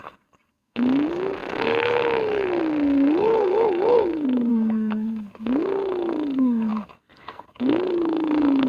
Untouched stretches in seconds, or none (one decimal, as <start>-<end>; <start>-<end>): none